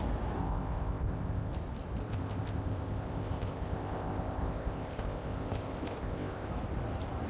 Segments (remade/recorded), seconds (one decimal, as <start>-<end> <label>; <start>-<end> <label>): 0.0-0.4 recorded; 0.4-1.5 remade; 1.5-2.1 recorded; 2.1-6.5 remade; 6.5-7.3 recorded